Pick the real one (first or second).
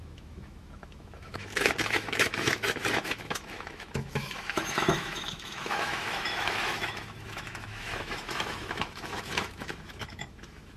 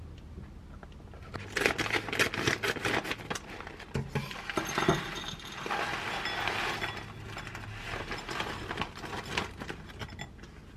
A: second